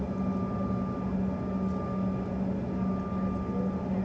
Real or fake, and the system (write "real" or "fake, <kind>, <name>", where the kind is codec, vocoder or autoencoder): real